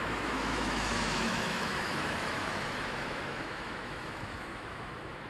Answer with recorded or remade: remade